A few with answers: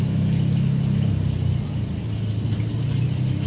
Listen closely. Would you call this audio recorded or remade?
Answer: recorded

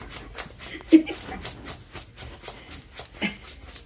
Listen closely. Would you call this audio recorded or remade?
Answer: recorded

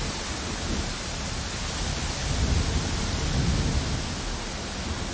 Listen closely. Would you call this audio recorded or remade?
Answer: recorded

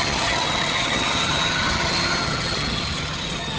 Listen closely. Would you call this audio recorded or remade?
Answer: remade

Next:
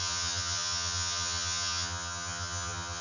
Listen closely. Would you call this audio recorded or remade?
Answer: remade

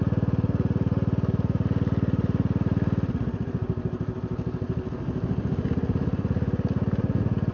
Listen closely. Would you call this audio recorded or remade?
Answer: recorded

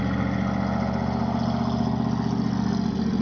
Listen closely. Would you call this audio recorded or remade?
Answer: recorded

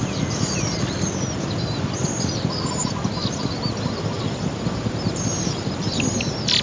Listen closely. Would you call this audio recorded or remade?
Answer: recorded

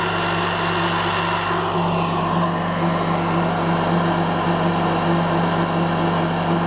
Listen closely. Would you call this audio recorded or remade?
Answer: recorded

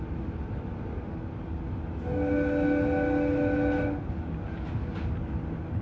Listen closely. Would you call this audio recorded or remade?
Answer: recorded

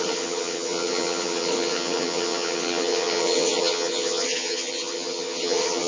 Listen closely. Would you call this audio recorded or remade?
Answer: remade